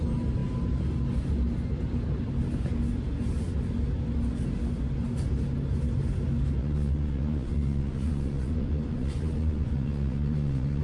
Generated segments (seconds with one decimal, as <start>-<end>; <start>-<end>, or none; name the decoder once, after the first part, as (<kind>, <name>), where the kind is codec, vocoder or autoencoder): 6.6-10.8 (vocoder, Vocos)

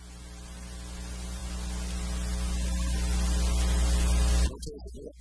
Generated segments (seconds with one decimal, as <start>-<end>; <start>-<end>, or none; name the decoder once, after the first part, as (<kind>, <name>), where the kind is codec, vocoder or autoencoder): none

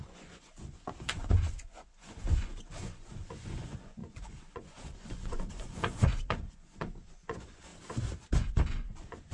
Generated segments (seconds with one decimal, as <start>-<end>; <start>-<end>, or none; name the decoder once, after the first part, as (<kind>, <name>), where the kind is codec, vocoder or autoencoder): 0.0-7.7 (vocoder, Vocos); 8.5-9.3

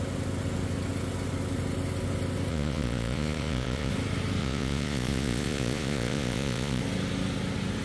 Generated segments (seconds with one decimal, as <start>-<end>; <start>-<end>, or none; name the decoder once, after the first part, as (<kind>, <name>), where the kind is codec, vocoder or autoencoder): 2.5-3.9 (vocoder, Vocos); 4.4-6.8

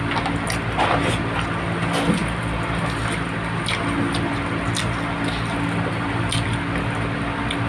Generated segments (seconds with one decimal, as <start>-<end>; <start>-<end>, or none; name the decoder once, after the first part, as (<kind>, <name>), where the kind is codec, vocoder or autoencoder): none

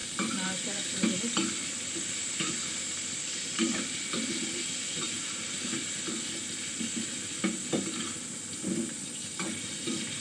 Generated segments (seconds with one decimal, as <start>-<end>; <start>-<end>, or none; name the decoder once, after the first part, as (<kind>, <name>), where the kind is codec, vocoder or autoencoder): none